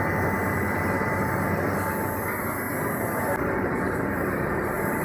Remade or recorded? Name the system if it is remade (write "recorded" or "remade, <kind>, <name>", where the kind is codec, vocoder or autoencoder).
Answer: recorded